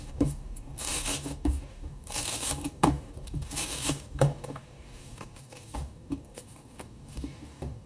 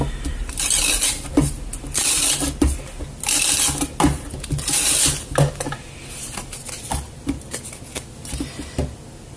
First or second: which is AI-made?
first